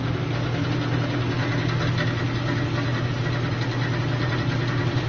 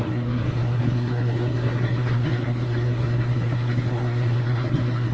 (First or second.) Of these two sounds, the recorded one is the first